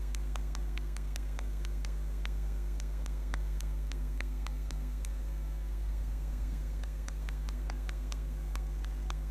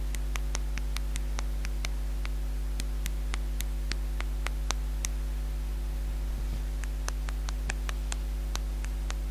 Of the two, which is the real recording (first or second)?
second